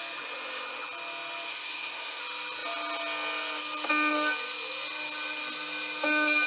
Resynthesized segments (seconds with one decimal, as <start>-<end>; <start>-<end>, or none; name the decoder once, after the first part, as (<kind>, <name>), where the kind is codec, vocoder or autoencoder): 1.5-2.2 (codec, SNAC)